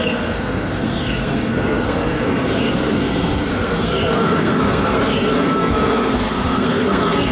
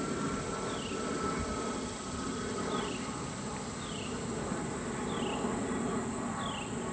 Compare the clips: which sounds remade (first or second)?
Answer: first